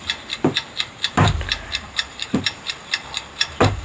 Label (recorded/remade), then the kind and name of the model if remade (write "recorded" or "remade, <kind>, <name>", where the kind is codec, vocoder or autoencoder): remade, vocoder, BigVGAN v2